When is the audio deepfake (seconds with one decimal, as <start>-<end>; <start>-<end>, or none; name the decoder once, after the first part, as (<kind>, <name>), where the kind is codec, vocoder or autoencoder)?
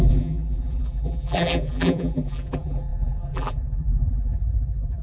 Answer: 0.0-5.0 (vocoder, BigVGAN v2)